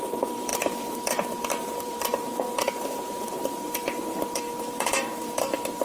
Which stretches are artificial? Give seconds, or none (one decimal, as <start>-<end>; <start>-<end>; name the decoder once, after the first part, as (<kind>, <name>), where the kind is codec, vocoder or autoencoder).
0.0-5.8 (vocoder, BigVGAN v2)